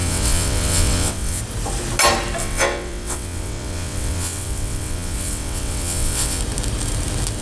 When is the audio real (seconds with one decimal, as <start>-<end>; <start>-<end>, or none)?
1.4-2.4; 6.4-7.4